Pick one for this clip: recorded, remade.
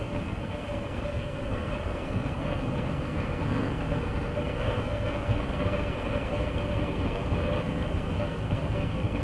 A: remade